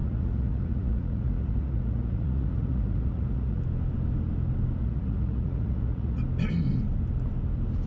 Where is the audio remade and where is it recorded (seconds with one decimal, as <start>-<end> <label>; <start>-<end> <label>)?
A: 0.0-3.6 remade; 3.6-4.8 recorded; 4.8-6.2 remade; 6.2-7.9 recorded